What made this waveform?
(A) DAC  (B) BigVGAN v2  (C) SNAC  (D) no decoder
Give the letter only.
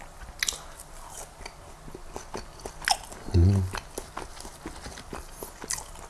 D